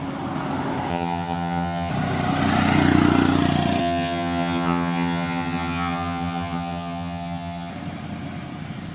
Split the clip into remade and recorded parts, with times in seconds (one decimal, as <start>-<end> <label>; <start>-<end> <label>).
0.0-0.9 recorded; 0.9-1.9 remade; 1.9-3.8 recorded; 3.8-7.7 remade; 7.7-8.9 recorded